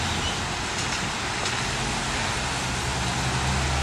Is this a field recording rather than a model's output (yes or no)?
yes